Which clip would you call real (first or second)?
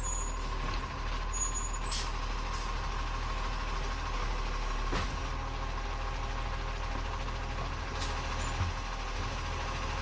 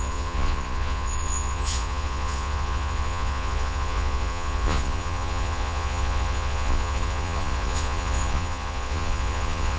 first